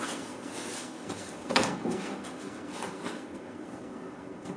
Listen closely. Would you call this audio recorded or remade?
remade